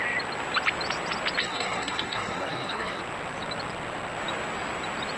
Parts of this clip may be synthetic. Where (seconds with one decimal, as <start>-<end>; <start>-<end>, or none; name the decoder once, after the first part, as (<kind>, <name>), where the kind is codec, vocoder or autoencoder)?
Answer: 1.4-3.0 (codec, SNAC)